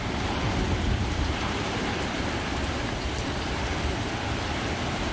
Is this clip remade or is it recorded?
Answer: recorded